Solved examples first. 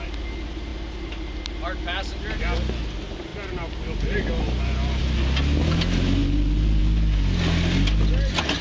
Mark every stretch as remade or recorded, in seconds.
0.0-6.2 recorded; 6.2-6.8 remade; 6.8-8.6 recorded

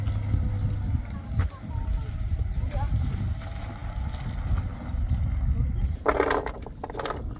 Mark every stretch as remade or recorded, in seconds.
0.0-7.4 recorded

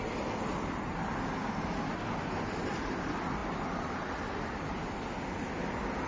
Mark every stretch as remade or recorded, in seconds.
0.0-6.1 recorded

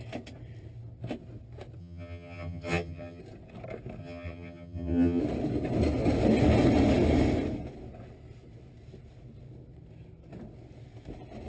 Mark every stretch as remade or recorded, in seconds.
0.0-1.8 recorded; 1.8-3.2 remade; 3.2-4.0 recorded; 4.0-5.2 remade; 5.2-11.5 recorded

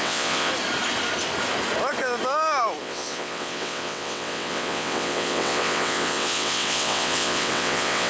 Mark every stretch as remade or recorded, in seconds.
0.0-0.5 remade; 0.5-2.8 recorded; 2.8-8.1 remade

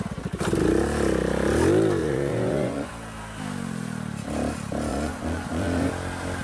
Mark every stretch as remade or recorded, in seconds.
0.0-2.0 recorded; 2.0-2.9 remade; 2.9-4.9 recorded; 4.9-5.9 remade; 5.9-6.4 recorded

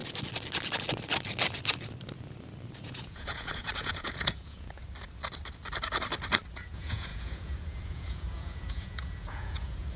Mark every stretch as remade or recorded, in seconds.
0.0-2.8 recorded; 2.8-4.8 remade; 4.8-6.5 recorded; 6.5-10.0 remade

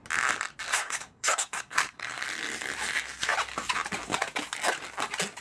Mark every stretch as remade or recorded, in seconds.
0.0-0.7 recorded; 0.7-2.2 remade; 2.2-5.4 recorded